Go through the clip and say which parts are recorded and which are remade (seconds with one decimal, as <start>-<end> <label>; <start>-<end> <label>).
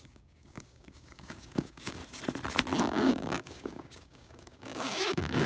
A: 0.0-2.0 remade; 2.0-2.8 recorded; 2.8-5.5 remade